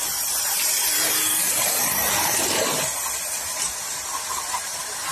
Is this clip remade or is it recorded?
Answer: recorded